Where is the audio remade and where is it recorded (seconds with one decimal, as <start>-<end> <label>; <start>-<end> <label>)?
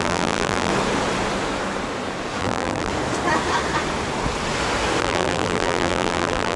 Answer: 0.0-0.7 remade; 0.7-2.4 recorded; 2.4-2.9 remade; 2.9-5.0 recorded; 5.0-6.6 remade